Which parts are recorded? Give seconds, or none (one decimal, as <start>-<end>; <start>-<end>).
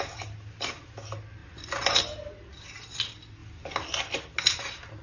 0.0-5.0